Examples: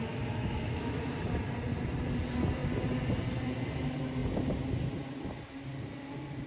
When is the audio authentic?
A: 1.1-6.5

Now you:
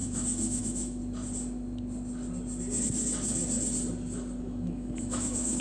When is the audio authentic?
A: 1.0-4.4

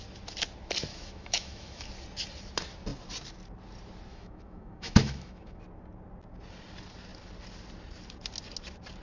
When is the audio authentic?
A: 0.0-0.9; 1.9-4.1; 5.6-9.0

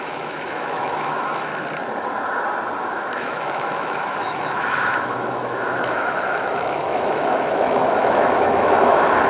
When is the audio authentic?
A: 1.5-2.8

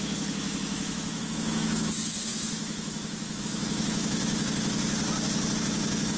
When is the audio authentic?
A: 4.2-5.6